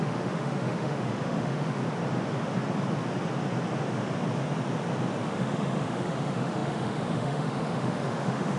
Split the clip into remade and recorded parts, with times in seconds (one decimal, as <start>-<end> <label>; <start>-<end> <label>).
0.0-1.8 remade; 1.8-5.2 recorded; 5.2-8.6 remade